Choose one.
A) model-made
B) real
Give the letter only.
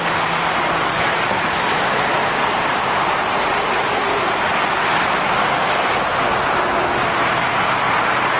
B